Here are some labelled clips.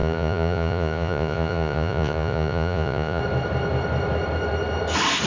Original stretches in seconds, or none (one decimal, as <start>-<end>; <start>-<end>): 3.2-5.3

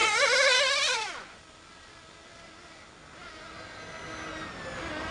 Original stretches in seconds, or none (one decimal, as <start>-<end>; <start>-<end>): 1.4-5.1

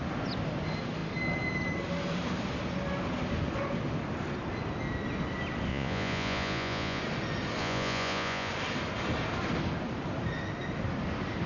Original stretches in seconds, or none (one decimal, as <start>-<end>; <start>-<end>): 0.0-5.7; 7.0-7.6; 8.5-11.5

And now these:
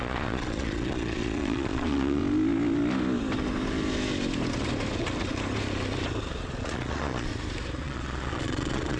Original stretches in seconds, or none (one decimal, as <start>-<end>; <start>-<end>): 2.2-6.6; 7.3-7.8